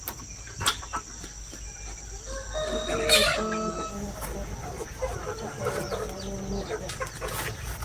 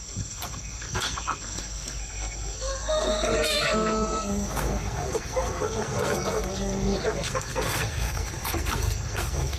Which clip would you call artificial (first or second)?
second